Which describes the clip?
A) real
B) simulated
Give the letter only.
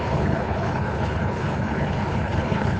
B